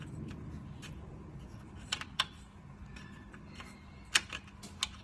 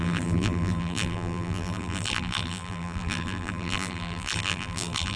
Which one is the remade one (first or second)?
second